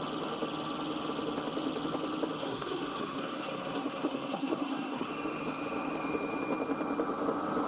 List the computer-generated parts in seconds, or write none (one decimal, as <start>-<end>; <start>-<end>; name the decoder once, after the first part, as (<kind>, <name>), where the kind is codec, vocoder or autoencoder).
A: 2.4-5.1 (codec, SNAC)